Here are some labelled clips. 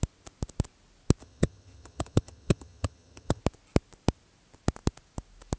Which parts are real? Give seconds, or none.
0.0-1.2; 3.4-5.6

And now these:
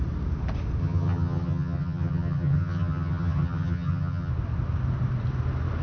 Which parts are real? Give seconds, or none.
0.0-0.8; 4.3-5.8

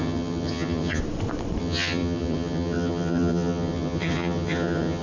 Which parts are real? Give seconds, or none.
1.0-1.6